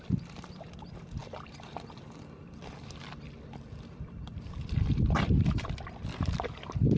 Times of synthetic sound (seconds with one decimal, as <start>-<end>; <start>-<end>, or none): 0.0-7.0